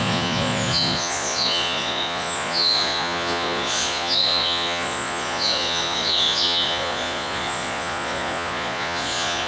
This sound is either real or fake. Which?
fake